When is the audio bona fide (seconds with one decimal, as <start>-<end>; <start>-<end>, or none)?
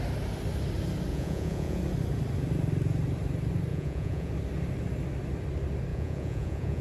0.0-1.1; 1.8-3.7; 4.3-5.9